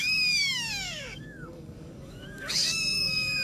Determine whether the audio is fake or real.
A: fake